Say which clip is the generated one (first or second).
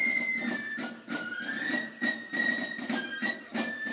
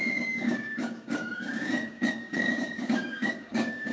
second